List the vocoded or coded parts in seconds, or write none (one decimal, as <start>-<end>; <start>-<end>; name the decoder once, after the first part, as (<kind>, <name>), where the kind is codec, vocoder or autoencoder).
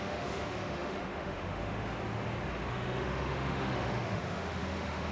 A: 0.0-1.9 (autoencoder, DAC-VAE); 2.7-5.1